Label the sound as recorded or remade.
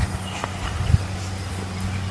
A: recorded